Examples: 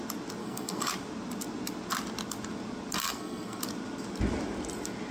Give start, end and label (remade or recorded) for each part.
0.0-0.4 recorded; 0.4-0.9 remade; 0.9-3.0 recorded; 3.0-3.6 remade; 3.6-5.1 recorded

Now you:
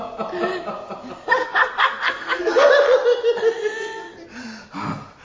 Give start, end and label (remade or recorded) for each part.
0.0-1.4 recorded; 1.4-2.7 remade; 2.7-5.2 recorded

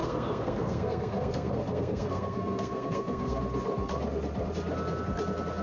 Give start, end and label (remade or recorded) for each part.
0.0-3.4 remade; 3.4-5.6 recorded

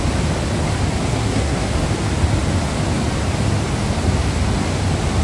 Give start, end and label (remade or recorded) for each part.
0.0-1.1 recorded; 1.1-1.7 remade; 1.7-5.2 recorded